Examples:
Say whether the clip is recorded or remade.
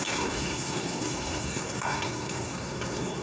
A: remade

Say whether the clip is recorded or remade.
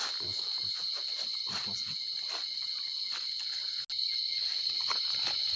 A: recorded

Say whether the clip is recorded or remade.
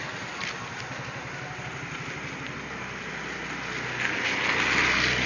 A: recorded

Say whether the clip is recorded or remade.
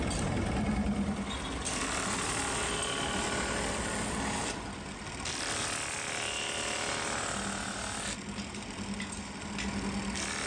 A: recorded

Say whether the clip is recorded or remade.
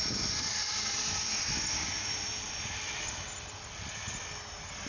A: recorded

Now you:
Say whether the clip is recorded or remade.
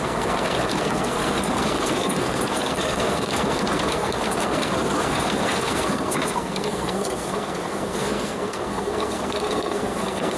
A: remade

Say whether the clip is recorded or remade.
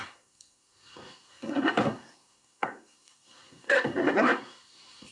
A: remade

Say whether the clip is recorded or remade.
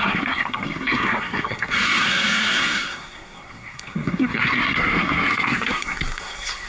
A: remade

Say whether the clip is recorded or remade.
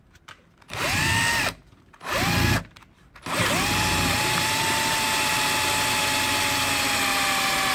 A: recorded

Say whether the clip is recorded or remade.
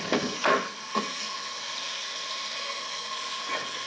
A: remade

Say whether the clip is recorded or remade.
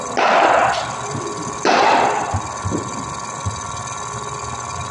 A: recorded